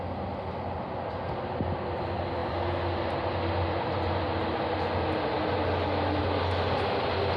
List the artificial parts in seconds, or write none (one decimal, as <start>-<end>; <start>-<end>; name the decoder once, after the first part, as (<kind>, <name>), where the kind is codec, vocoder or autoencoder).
none